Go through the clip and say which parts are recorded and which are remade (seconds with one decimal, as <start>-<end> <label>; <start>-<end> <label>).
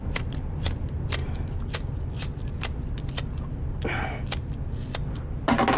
0.0-5.8 recorded